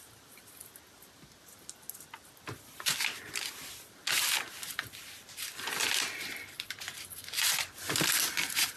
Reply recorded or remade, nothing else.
recorded